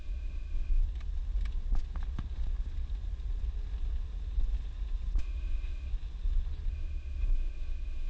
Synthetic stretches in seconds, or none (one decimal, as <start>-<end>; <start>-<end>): 0.0-0.8; 5.2-5.9; 6.7-8.1